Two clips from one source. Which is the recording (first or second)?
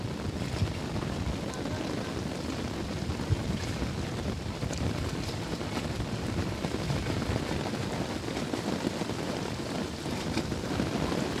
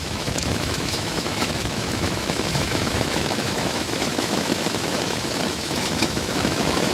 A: first